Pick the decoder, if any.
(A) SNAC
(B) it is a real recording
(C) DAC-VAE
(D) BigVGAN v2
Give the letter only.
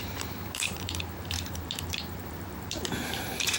D